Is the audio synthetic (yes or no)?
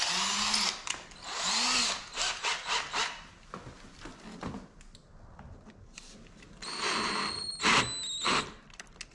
no